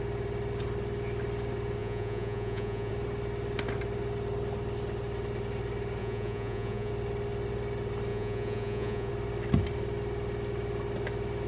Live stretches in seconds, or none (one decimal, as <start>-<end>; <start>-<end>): 0.0-1.8; 2.9-6.0; 6.9-8.1; 9.1-11.5